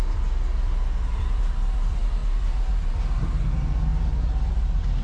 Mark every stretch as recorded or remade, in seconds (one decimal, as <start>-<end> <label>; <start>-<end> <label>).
0.0-5.0 recorded